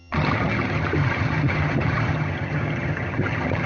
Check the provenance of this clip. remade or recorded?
remade